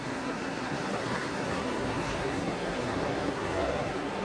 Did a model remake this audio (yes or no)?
yes